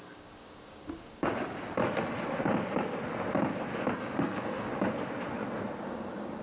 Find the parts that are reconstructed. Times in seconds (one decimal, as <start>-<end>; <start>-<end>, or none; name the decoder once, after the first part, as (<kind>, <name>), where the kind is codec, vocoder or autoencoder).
0.0-1.8 (codec, DAC); 3.9-4.7; 5.8-6.4

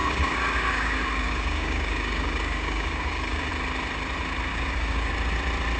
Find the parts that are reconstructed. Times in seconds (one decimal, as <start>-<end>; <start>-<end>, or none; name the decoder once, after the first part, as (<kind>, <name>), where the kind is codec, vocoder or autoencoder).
0.0-3.5 (codec, DAC); 4.5-5.1

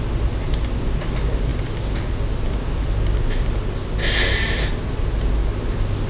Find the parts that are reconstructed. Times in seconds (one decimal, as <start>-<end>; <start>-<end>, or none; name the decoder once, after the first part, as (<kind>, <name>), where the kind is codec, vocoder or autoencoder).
none

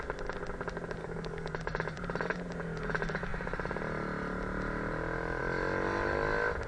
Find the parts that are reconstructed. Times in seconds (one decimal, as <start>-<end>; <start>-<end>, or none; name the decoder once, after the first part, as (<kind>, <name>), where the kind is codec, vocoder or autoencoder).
1.0-1.5 (codec, DAC)

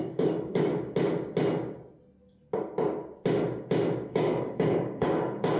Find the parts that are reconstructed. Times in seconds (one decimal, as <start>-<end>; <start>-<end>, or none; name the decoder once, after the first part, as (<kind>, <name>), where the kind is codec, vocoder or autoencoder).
0.0-0.7 (codec, DAC); 4.1-5.6